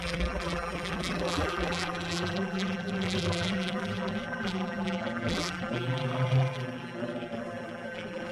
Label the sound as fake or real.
fake